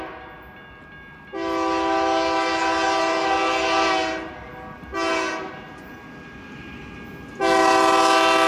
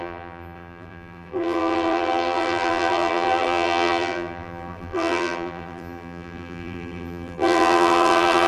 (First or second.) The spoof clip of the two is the second